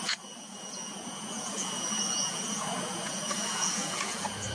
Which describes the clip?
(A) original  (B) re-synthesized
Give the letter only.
B